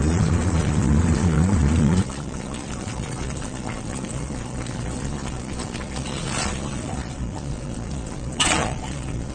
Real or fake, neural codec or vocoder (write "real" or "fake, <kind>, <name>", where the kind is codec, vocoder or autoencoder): fake, vocoder, Vocos